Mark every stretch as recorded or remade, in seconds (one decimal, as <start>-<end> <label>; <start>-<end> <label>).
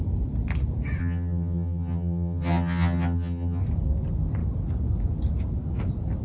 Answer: 0.0-1.0 recorded; 1.0-3.6 remade; 3.6-6.2 recorded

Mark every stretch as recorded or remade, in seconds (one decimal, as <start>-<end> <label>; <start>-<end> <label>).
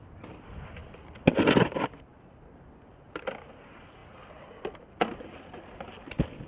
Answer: 0.0-6.5 recorded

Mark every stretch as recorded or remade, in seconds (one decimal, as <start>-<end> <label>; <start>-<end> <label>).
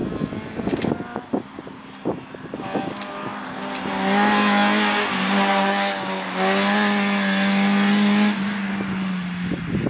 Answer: 0.0-9.9 recorded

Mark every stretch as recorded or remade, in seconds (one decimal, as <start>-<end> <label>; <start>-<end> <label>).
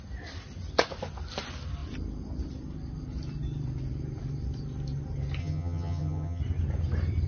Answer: 0.0-5.4 recorded; 5.4-6.4 remade; 6.4-7.3 recorded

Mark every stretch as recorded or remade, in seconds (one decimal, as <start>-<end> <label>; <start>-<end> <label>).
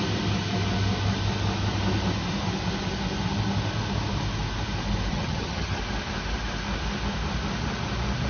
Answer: 0.0-5.1 recorded; 5.1-5.8 remade; 5.8-8.3 recorded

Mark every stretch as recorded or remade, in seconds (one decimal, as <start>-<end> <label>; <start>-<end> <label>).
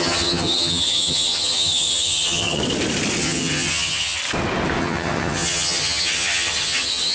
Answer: 0.0-2.6 remade; 2.6-3.2 recorded; 3.2-4.2 remade; 4.2-4.8 recorded; 4.8-7.1 remade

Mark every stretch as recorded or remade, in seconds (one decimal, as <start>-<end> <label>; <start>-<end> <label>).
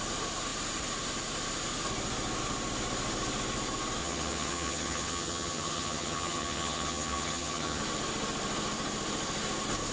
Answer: 0.0-4.0 recorded; 4.0-7.8 remade; 7.8-9.9 recorded